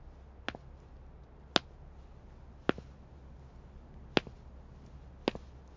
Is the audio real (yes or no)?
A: yes